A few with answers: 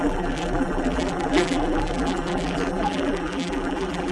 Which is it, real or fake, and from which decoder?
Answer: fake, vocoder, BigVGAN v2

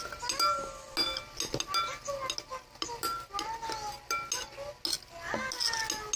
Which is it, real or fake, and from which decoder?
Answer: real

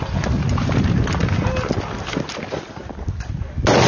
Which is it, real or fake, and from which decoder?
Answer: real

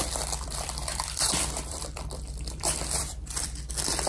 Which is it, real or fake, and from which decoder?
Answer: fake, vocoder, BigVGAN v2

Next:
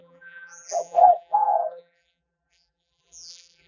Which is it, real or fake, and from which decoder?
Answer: fake, vocoder, BigVGAN v2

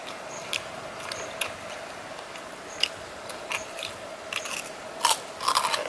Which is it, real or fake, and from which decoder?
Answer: real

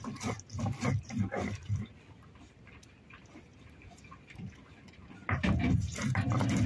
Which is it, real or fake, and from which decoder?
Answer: fake, vocoder, BigVGAN v2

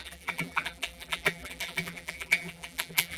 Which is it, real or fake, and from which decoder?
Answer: fake, vocoder, BigVGAN v2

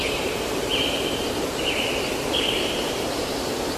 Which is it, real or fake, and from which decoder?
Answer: fake, vocoder, BigVGAN v2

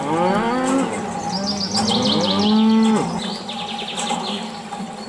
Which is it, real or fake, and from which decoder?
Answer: real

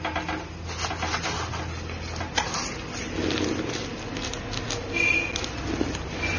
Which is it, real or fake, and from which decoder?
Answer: real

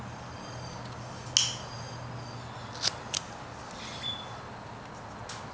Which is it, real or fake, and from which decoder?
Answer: real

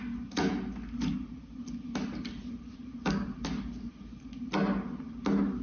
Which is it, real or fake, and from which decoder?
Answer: real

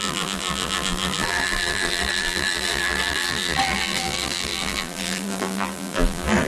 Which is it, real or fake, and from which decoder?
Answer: fake, vocoder, BigVGAN v2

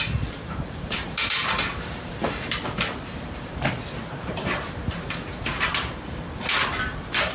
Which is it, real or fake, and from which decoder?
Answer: fake, vocoder, BigVGAN v2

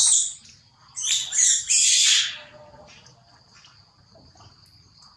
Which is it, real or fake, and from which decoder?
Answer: real